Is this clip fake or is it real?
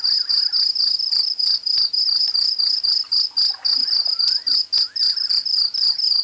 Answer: real